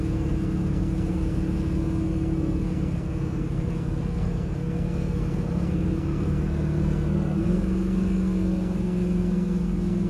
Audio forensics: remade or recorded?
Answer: remade